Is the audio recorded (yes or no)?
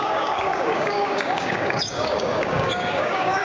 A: no